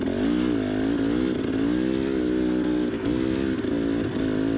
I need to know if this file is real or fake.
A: real